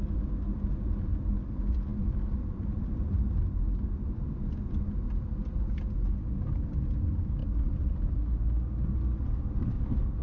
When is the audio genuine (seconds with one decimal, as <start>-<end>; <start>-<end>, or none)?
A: 0.0-1.9; 5.2-7.4; 8.2-10.2